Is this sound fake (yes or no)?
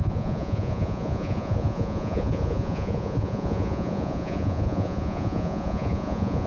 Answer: yes